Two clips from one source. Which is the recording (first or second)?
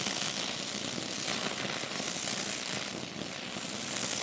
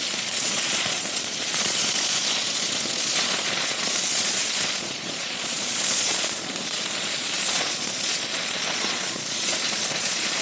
first